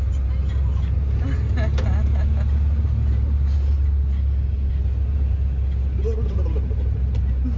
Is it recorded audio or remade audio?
recorded